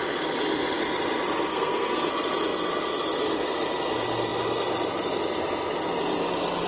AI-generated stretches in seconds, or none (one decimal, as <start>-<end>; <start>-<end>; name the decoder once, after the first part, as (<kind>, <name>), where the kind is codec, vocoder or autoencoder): 1.5-2.1 (codec, SNAC)